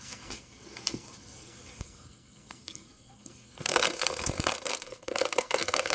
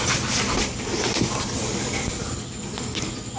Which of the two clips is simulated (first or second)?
first